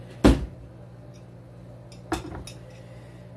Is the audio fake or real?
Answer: real